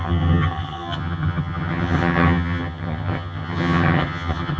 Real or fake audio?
fake